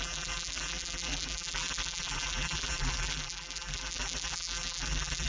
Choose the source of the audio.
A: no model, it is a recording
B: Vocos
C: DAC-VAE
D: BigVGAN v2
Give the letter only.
D